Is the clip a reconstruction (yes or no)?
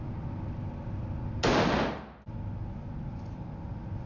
no